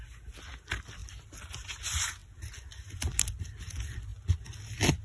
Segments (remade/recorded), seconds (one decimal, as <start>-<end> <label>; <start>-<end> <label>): 0.0-5.0 recorded